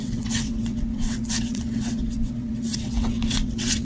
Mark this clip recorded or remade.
remade